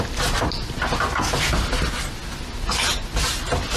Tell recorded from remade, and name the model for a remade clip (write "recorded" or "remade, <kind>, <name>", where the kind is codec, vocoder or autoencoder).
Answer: recorded